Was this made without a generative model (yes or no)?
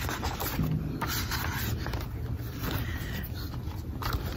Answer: yes